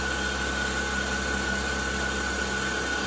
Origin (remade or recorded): recorded